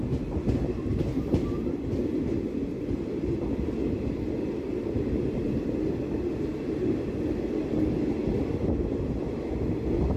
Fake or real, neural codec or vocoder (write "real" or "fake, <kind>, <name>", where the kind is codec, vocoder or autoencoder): real